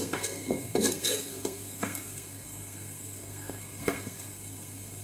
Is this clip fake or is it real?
fake